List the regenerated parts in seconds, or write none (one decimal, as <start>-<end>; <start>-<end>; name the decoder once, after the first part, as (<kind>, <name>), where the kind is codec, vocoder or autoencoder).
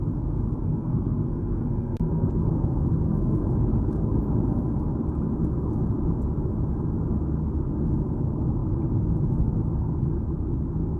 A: 0.7-3.4 (codec, SNAC)